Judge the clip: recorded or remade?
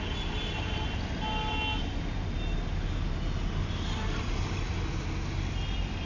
recorded